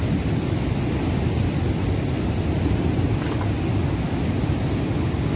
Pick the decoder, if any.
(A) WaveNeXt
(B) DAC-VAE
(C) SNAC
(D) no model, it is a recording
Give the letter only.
D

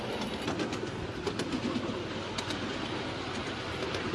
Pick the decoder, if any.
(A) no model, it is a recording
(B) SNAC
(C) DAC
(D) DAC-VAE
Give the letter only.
A